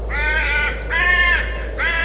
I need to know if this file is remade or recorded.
recorded